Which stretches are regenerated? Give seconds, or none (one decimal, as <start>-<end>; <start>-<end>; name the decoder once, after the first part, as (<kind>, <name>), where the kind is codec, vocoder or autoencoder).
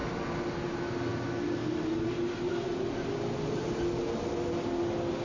none